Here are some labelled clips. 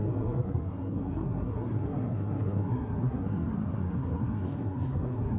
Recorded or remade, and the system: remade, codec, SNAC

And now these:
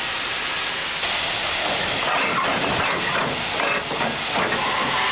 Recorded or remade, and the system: recorded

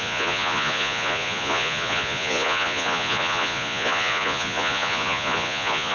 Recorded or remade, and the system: remade, vocoder, Vocos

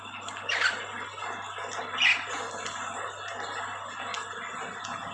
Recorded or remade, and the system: recorded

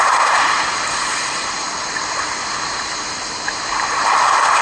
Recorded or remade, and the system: remade, vocoder, BigVGAN v2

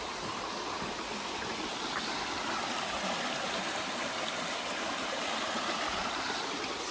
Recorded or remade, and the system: recorded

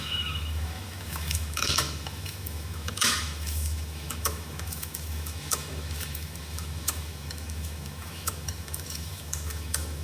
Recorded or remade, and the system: remade, autoencoder, DAC-VAE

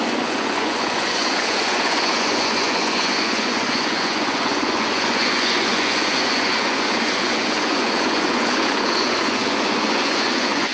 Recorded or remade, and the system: remade, vocoder, Vocos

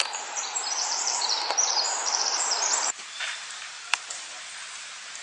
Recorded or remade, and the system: remade, vocoder, BigVGAN v2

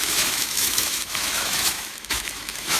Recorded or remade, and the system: remade, autoencoder, DAC-VAE